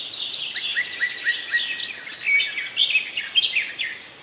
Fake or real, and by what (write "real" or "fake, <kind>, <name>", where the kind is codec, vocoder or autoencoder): real